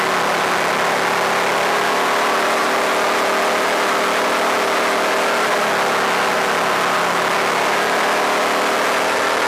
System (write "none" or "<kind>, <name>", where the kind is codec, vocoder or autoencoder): none